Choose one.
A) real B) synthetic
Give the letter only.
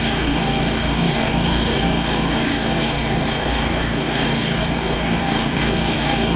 B